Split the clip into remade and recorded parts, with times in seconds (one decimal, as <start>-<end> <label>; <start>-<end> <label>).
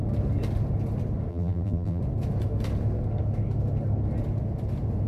0.0-1.3 recorded; 1.3-2.0 remade; 2.0-5.1 recorded